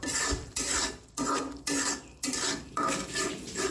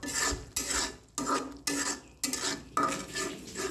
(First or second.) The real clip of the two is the second